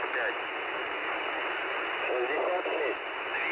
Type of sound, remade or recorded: recorded